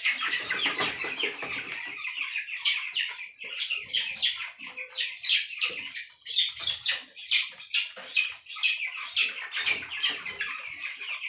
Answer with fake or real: fake